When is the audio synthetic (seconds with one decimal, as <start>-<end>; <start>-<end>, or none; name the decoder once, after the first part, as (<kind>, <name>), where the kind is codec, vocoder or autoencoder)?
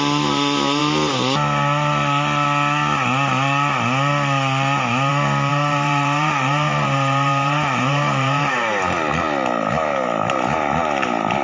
5.5-8.5 (vocoder, BigVGAN v2)